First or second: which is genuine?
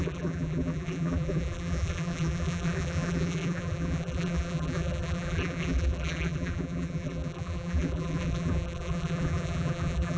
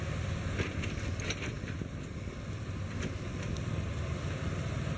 second